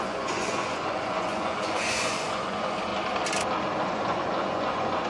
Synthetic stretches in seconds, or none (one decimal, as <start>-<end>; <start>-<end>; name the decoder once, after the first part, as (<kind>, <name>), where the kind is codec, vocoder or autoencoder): 0.0-2.9 (vocoder, Vocos); 3.8-5.1